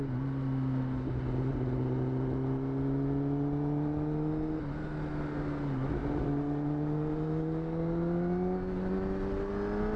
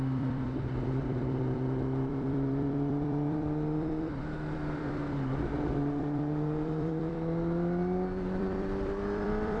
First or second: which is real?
first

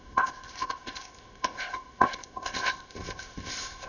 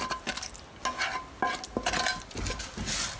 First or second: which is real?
second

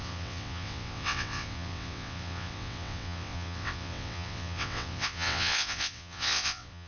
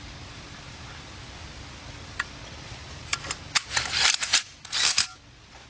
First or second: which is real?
second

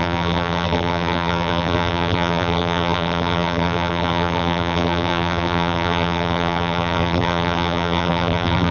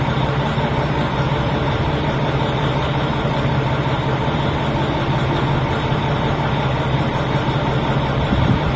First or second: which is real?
second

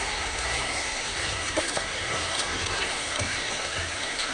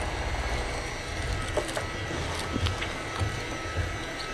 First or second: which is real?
second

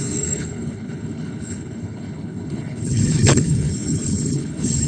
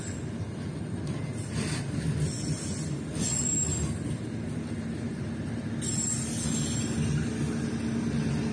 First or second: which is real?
second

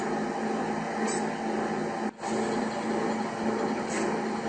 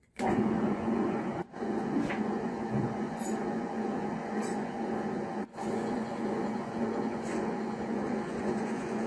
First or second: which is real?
first